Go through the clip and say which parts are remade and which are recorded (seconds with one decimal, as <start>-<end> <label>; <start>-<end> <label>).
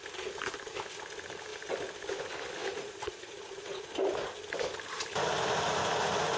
0.0-2.6 recorded; 2.6-3.9 remade; 3.9-6.4 recorded